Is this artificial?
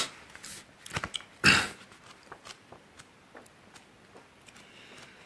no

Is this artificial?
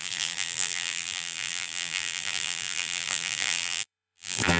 yes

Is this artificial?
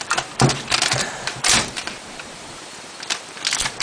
yes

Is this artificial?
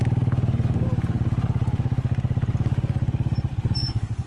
no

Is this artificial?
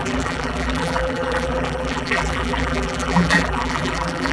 yes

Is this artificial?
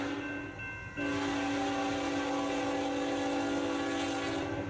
no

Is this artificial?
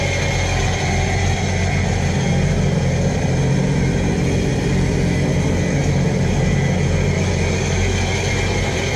no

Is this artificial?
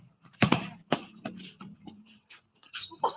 yes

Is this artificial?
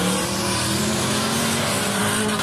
yes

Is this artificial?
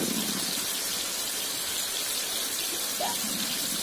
no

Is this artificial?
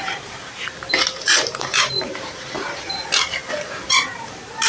yes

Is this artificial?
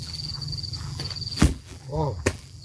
yes